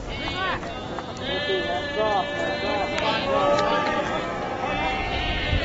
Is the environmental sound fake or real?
real